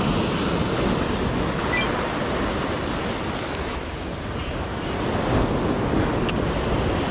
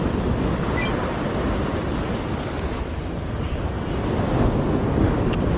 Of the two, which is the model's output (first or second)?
second